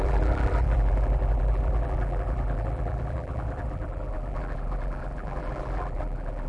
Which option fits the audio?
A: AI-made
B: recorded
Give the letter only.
A